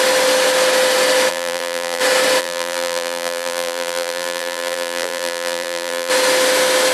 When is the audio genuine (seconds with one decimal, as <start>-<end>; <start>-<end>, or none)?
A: 0.0-1.3; 2.0-2.4; 6.1-6.9